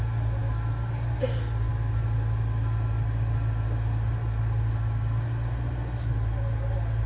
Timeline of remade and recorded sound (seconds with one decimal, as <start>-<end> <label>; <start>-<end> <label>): 0.0-7.1 recorded